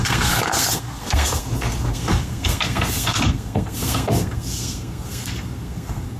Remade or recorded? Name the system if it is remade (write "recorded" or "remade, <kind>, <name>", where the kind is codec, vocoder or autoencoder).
remade, codec, SNAC